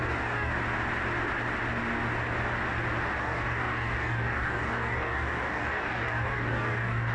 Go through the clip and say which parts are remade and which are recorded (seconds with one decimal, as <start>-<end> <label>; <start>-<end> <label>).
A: 0.0-0.5 remade; 0.5-3.2 recorded; 3.2-7.1 remade